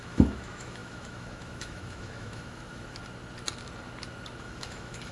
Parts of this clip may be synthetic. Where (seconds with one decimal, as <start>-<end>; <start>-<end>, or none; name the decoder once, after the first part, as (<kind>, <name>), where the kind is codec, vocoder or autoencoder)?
0.0-3.0 (autoencoder, DAC-VAE); 4.4-5.1